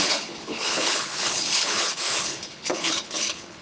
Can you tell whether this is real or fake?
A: fake